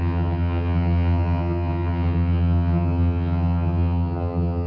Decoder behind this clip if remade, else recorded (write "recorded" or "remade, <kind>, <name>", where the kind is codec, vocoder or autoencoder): remade, vocoder, HiFi-GAN